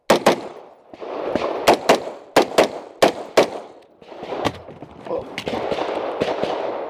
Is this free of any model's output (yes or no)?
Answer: yes